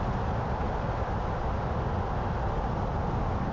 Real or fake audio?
real